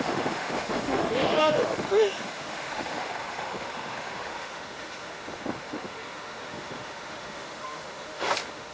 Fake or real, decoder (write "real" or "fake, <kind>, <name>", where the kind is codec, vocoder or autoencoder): fake, autoencoder, DAC-VAE